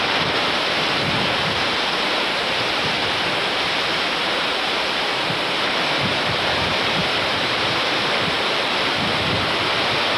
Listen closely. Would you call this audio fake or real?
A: fake